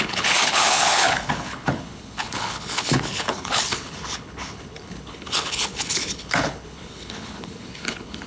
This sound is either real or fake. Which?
fake